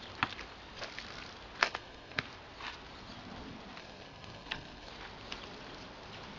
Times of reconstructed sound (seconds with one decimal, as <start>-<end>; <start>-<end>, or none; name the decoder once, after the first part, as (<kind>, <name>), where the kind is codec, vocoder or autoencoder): 1.6-2.2 (codec, SNAC); 3.8-4.9